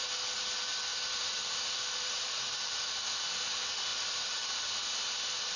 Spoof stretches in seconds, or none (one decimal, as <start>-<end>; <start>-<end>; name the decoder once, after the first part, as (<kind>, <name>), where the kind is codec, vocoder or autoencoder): 0.9-3.0 (vocoder, BigVGAN v2); 3.9-4.7